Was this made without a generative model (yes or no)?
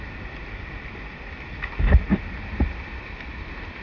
yes